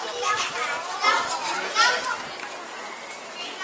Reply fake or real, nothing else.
real